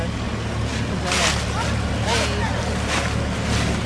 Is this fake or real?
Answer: real